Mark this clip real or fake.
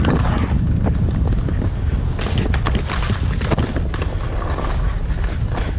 real